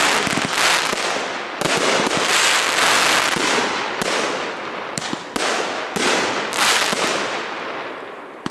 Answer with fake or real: real